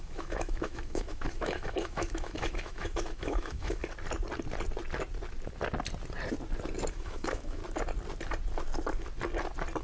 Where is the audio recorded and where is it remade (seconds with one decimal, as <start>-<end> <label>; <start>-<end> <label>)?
0.0-3.8 remade; 3.8-6.9 recorded; 6.9-7.6 remade; 7.6-9.8 recorded